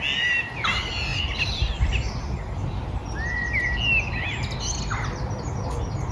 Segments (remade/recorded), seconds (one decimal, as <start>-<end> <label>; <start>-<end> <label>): 0.0-6.1 recorded